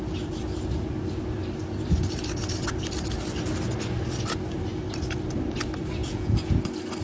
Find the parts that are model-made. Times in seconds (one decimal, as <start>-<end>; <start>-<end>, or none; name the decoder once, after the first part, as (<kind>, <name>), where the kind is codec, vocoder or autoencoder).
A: 6.0-6.6 (vocoder, Vocos)